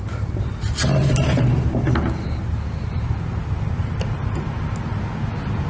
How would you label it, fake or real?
real